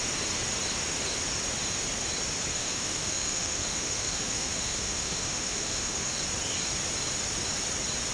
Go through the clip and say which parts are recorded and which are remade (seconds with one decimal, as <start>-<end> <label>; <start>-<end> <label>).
0.0-2.5 recorded; 2.5-6.2 remade; 6.2-8.1 recorded